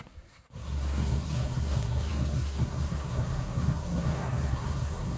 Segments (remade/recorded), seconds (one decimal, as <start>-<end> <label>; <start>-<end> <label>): 0.0-5.2 remade